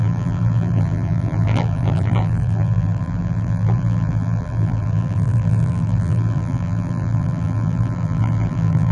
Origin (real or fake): fake